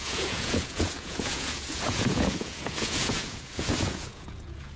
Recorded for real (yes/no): no